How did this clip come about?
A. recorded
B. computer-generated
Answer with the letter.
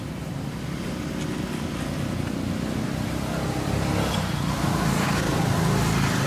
A